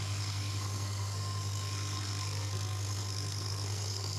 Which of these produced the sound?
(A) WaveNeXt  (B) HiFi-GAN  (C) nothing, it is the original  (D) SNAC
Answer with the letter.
D